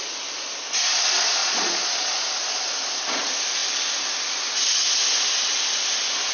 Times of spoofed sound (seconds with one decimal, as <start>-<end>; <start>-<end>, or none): 1.4-2.2